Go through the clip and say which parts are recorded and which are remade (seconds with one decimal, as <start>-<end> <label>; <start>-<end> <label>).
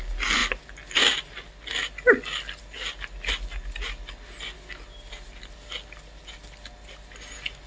0.0-7.7 recorded